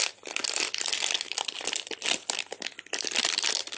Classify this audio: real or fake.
fake